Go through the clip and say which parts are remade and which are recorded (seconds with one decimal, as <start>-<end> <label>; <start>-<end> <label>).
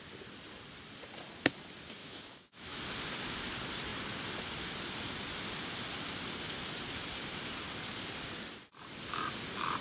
0.0-2.0 recorded; 2.0-2.8 remade; 2.8-9.8 recorded